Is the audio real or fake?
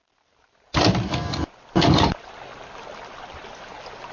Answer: real